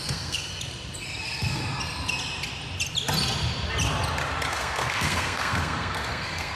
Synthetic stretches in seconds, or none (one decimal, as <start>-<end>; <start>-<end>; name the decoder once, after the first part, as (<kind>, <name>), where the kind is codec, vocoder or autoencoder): 0.0-0.5 (codec, SNAC); 1.2-1.6; 4.5-6.6